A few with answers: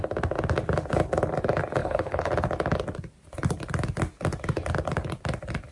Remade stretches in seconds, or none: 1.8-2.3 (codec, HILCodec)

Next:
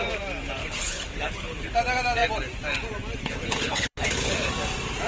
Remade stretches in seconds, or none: 0.6-1.7 (codec, HILCodec); 3.2-4.5

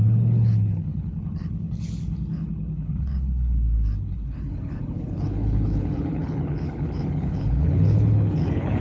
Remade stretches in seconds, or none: 0.0-8.8 (codec, HILCodec)

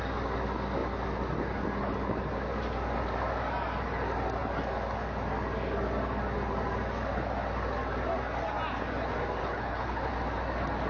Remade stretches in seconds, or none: 9.4-10.1 (codec, HILCodec)